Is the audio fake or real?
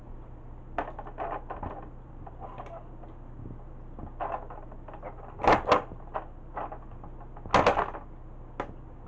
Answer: real